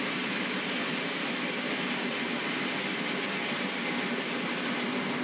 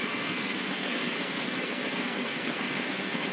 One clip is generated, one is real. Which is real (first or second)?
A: first